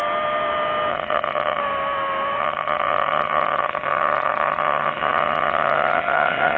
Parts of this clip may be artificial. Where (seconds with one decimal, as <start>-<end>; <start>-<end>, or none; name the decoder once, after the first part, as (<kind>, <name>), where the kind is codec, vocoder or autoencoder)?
0.9-1.6 (vocoder, HiFi-GAN); 2.4-6.6